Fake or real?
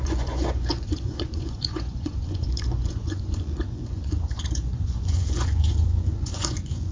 fake